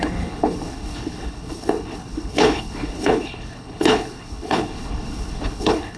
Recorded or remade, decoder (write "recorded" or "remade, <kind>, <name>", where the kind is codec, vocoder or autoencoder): remade, codec, HILCodec